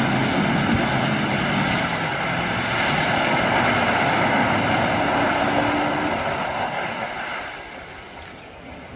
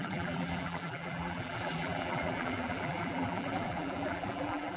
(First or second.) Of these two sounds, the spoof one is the second